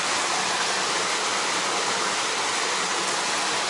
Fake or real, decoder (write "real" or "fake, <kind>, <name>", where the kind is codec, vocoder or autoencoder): real